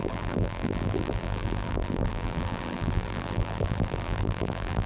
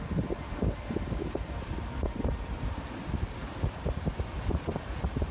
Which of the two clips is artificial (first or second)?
first